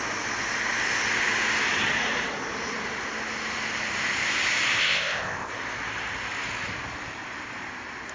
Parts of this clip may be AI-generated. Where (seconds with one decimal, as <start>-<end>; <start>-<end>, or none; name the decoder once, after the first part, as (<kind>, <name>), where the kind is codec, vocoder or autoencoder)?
4.8-5.5 (codec, ZipCodec)